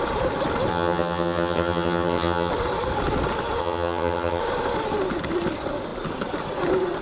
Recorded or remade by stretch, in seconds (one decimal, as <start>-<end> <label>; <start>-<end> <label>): 0.0-0.7 recorded; 0.7-2.5 remade; 2.5-3.6 recorded; 3.6-4.4 remade; 4.4-7.0 recorded